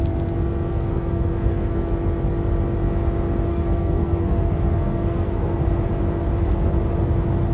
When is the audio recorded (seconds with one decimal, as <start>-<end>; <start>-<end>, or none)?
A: 0.0-0.7; 1.9-3.5; 5.6-7.5